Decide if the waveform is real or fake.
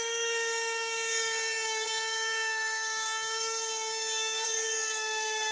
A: fake